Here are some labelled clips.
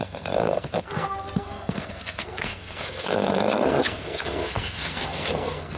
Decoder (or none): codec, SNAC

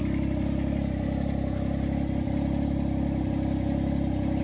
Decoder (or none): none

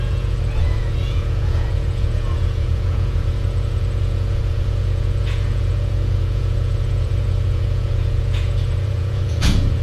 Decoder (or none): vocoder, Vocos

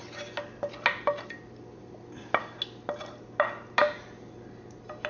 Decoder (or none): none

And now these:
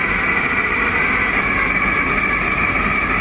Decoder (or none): none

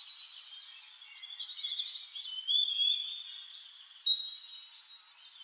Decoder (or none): none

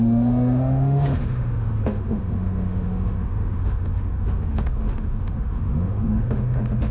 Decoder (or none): autoencoder, DAC-VAE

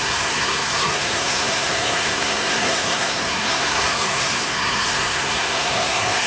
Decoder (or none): codec, SNAC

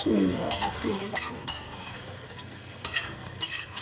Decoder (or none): codec, SNAC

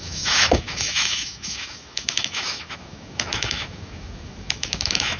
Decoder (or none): autoencoder, DAC-VAE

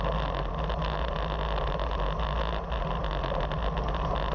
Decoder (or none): none